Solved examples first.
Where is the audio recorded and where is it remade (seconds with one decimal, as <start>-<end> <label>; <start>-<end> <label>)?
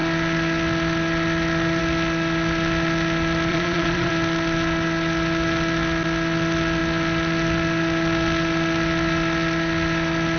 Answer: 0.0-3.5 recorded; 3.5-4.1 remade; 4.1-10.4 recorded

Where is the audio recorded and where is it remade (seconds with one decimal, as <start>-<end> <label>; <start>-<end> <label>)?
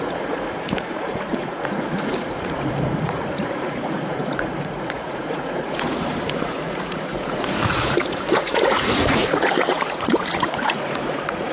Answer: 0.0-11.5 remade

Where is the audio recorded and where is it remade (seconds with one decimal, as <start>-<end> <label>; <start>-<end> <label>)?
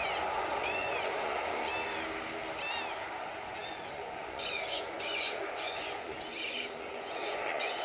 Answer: 0.0-1.7 remade; 1.7-2.9 recorded; 2.9-7.8 remade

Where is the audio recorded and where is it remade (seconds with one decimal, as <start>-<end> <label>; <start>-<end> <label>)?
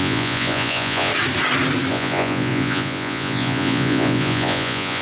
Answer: 0.0-1.1 remade; 1.1-1.9 recorded; 1.9-5.0 remade